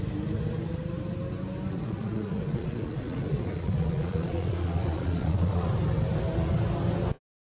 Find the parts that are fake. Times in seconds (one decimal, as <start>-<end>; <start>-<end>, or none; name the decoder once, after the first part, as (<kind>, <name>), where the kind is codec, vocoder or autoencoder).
1.7-5.7 (vocoder, Vocos)